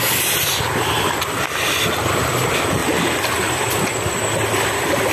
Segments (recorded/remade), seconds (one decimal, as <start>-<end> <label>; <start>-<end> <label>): 0.0-5.1 recorded